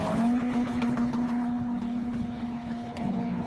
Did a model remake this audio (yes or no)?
yes